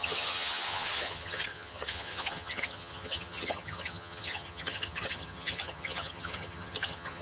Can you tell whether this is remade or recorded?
remade